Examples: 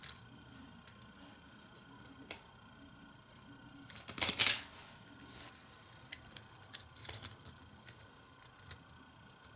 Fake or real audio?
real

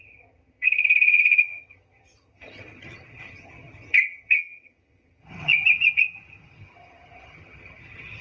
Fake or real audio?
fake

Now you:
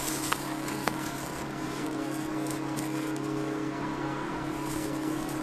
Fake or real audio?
fake